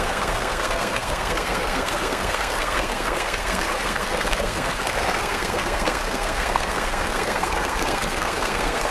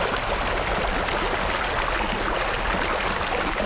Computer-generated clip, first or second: first